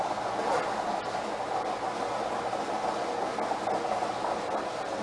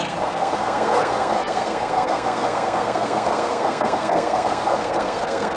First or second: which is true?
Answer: first